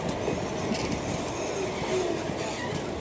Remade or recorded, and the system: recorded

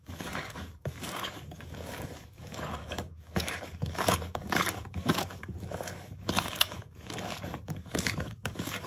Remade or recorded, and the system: remade, codec, DAC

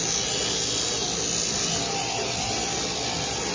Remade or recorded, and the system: recorded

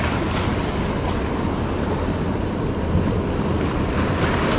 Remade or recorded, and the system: recorded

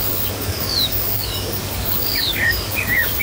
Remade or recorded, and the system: remade, codec, DAC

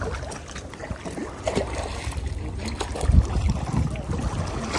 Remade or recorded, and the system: recorded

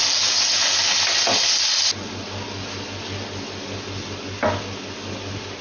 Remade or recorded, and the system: recorded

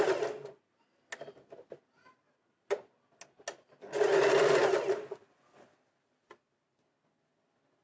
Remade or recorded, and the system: recorded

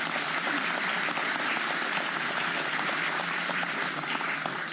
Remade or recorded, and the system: recorded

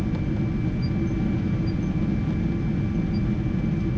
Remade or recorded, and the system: recorded